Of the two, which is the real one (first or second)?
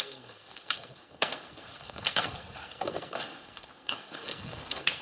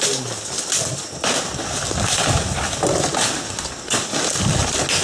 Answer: second